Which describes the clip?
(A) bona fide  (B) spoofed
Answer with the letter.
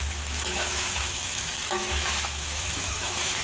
B